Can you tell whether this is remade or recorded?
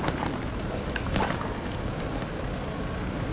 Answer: recorded